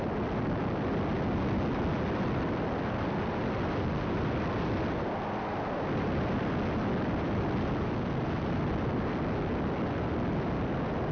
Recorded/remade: recorded